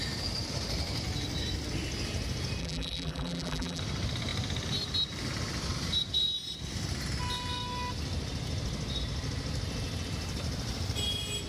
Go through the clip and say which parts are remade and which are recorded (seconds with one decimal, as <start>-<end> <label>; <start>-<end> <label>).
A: 0.0-2.6 recorded; 2.6-3.8 remade; 3.8-11.5 recorded